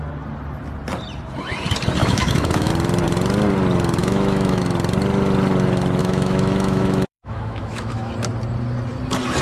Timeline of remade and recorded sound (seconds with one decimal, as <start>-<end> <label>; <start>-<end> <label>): 0.0-2.0 recorded; 2.0-2.7 remade; 2.7-4.0 recorded; 4.0-4.6 remade; 4.6-6.0 recorded; 6.0-8.1 remade; 8.1-9.4 recorded